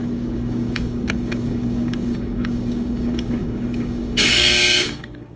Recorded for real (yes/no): no